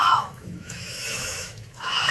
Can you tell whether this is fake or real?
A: fake